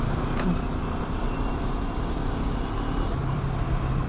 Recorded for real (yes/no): no